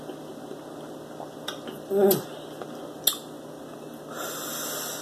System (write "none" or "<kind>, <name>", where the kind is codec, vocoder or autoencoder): none